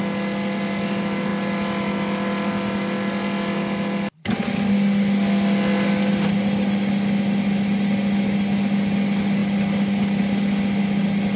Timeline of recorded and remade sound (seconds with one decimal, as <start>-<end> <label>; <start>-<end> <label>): 0.0-11.4 recorded